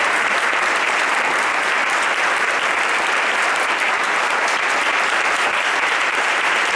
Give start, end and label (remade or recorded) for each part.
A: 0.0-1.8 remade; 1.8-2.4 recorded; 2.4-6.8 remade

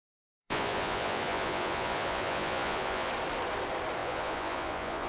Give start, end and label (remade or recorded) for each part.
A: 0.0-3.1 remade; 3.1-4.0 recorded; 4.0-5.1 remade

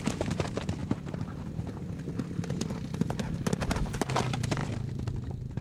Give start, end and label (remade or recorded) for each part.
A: 0.0-0.8 recorded; 0.8-3.9 remade; 3.9-4.6 recorded; 4.6-5.6 remade

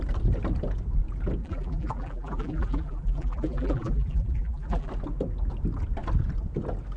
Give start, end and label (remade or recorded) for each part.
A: 0.0-1.4 recorded; 1.4-4.9 remade; 4.9-7.0 recorded